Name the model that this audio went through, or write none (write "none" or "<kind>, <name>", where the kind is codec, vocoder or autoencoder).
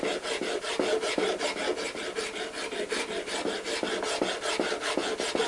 none